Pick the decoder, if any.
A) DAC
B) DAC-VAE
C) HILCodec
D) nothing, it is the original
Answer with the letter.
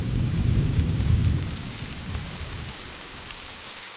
A